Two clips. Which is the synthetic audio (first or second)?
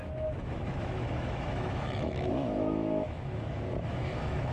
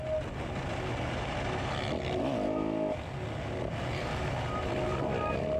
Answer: first